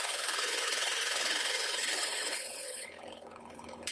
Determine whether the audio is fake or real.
fake